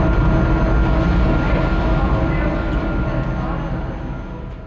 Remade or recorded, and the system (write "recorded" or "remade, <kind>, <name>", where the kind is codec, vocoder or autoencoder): recorded